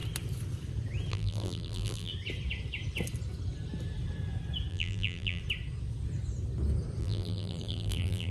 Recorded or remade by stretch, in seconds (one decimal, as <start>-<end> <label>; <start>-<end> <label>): 0.0-1.1 recorded; 1.1-2.1 remade; 2.1-4.7 recorded; 4.7-5.4 remade; 5.4-7.0 recorded; 7.0-8.3 remade